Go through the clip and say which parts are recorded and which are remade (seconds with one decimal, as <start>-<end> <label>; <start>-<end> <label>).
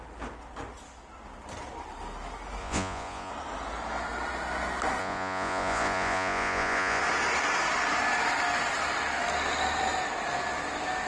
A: 0.0-2.6 recorded; 2.6-3.3 remade; 3.3-5.0 recorded; 5.0-7.0 remade; 7.0-11.1 recorded